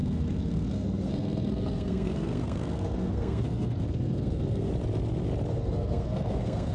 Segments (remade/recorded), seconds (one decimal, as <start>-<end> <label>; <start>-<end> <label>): 0.0-4.7 remade; 4.7-5.5 recorded; 5.5-6.7 remade